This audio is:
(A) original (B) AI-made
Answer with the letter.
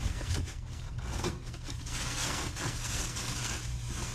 B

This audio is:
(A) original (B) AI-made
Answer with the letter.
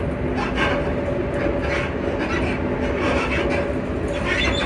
A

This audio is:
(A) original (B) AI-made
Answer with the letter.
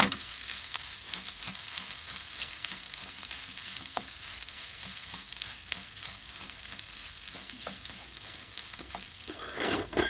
B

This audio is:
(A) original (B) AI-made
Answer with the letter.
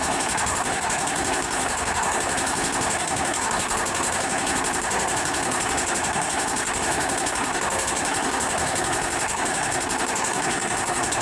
B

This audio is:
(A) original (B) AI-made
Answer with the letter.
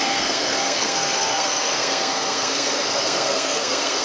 B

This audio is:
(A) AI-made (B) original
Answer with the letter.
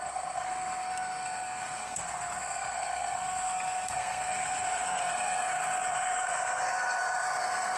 A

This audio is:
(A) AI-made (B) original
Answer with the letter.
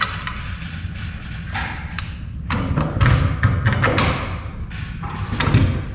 B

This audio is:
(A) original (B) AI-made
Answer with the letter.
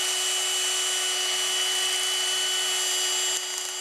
A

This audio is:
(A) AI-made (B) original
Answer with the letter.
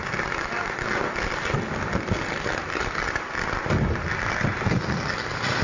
B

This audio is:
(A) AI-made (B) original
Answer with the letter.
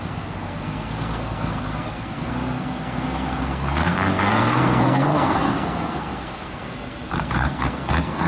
A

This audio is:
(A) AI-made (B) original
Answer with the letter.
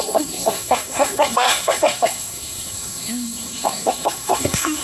A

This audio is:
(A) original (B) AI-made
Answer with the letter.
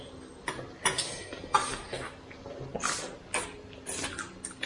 A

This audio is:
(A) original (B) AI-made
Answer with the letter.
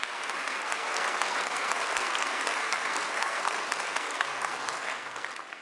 B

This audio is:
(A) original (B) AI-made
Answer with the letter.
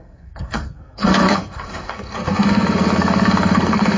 B